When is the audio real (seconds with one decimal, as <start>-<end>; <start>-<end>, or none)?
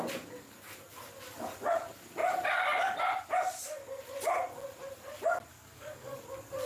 0.0-5.5; 6.2-6.7